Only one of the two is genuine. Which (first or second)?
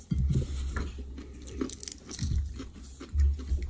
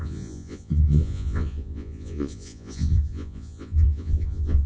first